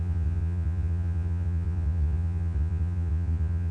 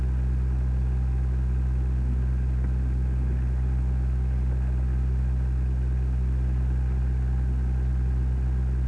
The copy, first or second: first